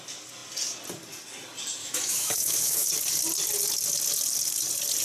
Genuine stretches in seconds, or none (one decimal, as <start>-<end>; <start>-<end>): 0.0-1.8; 2.9-5.0